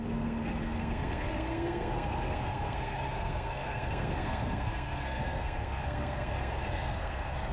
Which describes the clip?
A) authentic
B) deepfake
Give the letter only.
B